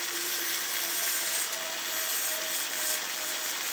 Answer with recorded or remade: remade